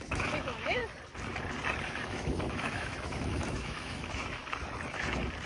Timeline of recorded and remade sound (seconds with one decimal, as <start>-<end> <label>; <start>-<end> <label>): 0.0-0.8 remade; 0.8-1.8 recorded; 1.8-4.4 remade; 4.4-5.5 recorded